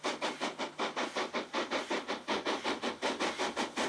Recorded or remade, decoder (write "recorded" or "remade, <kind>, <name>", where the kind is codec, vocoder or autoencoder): recorded